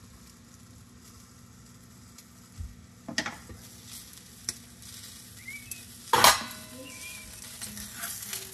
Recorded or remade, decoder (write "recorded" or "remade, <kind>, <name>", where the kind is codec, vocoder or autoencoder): recorded